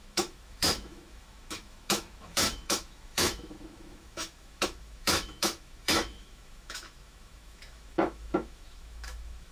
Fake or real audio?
fake